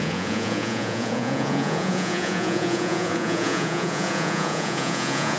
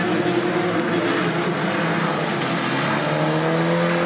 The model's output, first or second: first